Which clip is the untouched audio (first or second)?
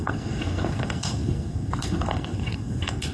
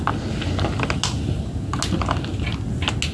second